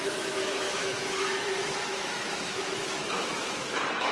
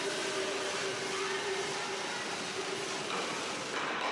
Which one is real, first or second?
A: second